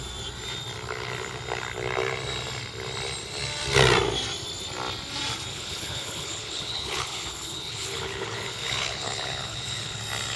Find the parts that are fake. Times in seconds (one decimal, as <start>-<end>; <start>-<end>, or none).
5.5-10.0

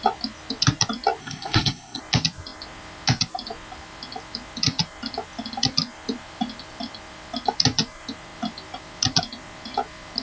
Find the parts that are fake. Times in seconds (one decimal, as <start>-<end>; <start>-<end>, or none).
1.2-2.0